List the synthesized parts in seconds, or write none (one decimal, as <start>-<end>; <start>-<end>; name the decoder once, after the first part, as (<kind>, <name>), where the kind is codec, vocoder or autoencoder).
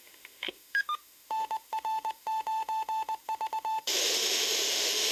0.0-5.1 (autoencoder, DAC-VAE)